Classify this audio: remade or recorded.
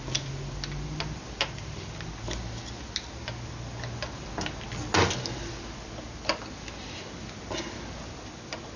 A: recorded